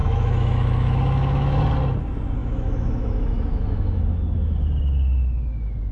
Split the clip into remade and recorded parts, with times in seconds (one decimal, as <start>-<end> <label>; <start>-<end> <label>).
0.0-1.6 remade; 1.6-2.4 recorded; 2.4-4.0 remade; 4.0-5.9 recorded